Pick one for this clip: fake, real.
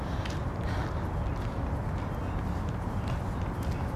real